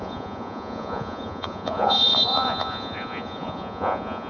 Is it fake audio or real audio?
fake